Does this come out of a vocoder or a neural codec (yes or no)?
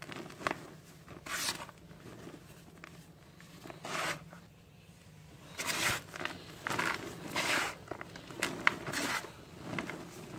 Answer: no